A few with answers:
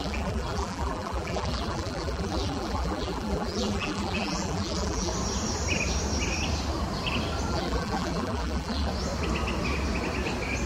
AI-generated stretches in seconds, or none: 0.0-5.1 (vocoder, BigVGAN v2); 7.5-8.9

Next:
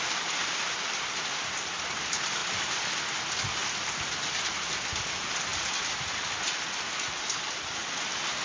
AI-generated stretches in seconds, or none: 2.4-3.0 (vocoder, BigVGAN v2); 3.6-4.1

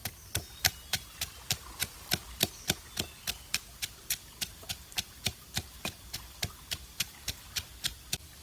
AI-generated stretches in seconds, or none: 1.8-2.5 (vocoder, BigVGAN v2); 4.2-7.7

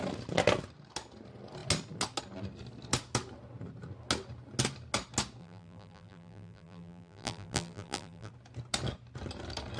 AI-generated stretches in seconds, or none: 5.4-8.3 (vocoder, BigVGAN v2)

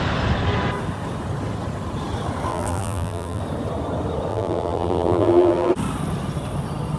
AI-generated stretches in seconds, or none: 2.5-3.4 (vocoder, BigVGAN v2); 4.3-5.7

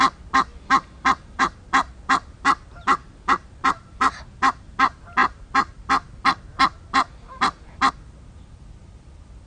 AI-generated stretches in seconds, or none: 3.0-3.6 (vocoder, BigVGAN v2)